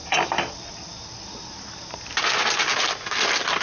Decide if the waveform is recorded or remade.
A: recorded